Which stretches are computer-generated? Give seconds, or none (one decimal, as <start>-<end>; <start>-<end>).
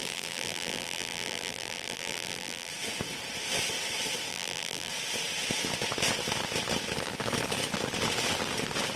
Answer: 0.0-2.7; 4.3-4.9